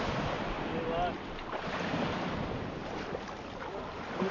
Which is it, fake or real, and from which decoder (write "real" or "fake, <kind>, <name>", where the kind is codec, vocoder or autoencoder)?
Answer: real